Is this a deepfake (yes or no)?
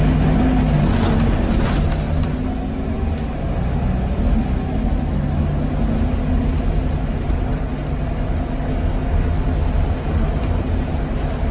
no